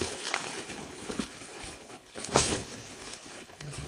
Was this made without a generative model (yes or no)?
no